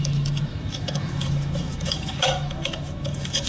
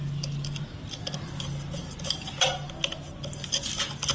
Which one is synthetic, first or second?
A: first